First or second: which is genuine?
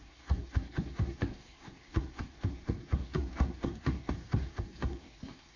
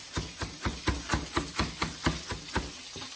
second